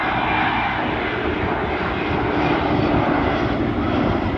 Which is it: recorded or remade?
recorded